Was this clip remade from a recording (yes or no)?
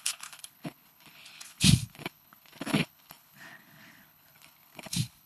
yes